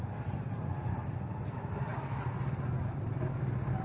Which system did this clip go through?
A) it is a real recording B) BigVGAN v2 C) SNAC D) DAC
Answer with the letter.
A